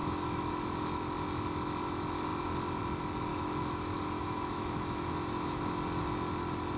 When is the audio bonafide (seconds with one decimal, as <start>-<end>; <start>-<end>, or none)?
0.5-3.3; 5.6-6.8

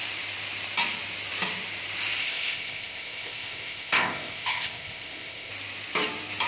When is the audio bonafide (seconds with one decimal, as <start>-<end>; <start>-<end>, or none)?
0.0-2.2; 5.5-6.5

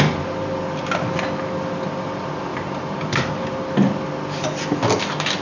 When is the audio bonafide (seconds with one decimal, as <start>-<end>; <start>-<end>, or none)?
0.0-2.5; 3.3-5.4